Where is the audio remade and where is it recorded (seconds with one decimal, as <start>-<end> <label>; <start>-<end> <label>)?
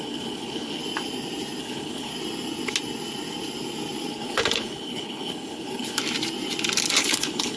0.0-0.8 remade; 0.8-1.6 recorded; 1.6-2.1 remade; 2.1-4.1 recorded; 4.1-6.0 remade; 6.0-7.0 recorded; 7.0-7.6 remade